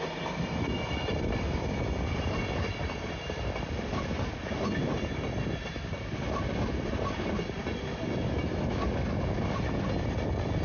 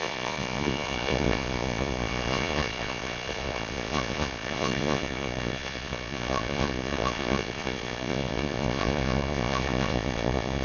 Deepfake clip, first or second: second